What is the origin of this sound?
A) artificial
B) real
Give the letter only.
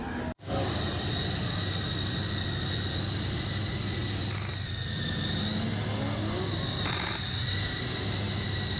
B